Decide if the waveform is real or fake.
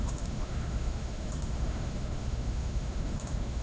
fake